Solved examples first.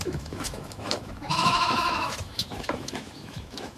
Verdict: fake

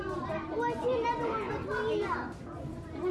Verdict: real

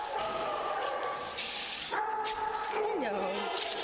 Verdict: real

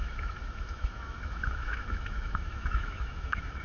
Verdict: fake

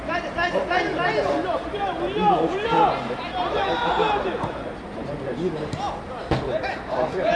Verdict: real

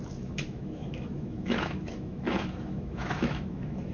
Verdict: fake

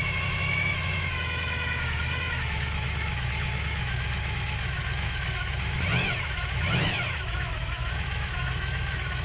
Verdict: fake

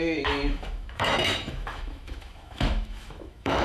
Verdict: fake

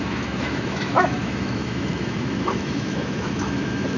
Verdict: fake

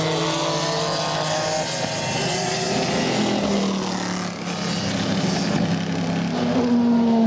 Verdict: real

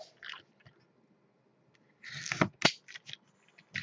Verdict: real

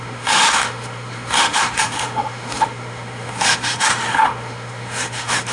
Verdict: fake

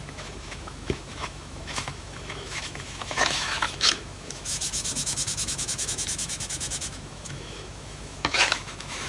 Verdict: fake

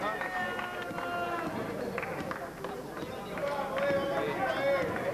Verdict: real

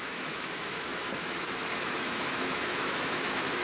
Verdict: fake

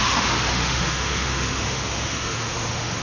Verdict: fake